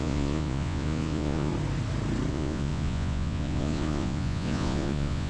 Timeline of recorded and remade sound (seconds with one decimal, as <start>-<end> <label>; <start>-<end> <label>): 0.0-1.5 remade; 1.5-2.3 recorded; 2.3-5.3 remade